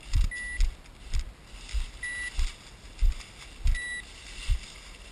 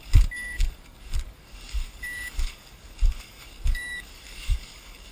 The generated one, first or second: second